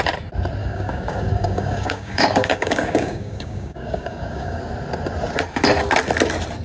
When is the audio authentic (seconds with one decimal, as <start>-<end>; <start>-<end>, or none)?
0.0-0.6; 4.6-6.6